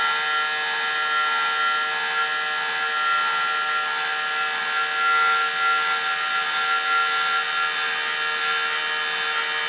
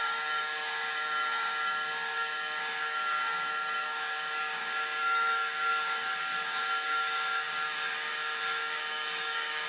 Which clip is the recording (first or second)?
first